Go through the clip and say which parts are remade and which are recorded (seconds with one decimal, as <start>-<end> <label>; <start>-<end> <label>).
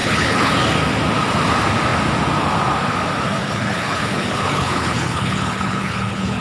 0.0-0.5 remade; 0.5-3.4 recorded; 3.4-6.4 remade